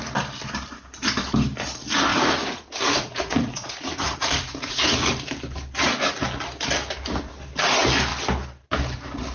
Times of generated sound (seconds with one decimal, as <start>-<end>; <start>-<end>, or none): 2.1-5.1